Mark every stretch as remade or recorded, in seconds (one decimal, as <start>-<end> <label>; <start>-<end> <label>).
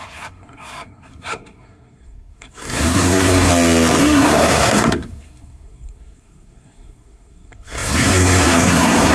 0.0-3.5 remade; 3.5-4.0 recorded; 4.0-9.1 remade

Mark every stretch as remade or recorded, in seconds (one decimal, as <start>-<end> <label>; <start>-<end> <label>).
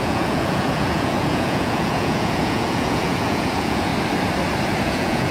0.0-3.9 remade; 3.9-4.8 recorded; 4.8-5.3 remade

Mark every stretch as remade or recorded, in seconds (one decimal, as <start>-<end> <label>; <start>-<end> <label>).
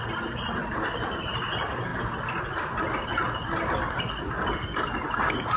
0.0-5.6 recorded